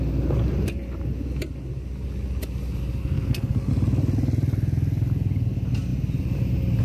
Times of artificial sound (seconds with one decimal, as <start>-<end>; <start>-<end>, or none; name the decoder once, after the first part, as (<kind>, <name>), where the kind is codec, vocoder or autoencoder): 3.0-3.7 (codec, SNAC)